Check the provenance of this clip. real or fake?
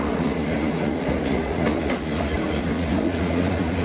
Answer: fake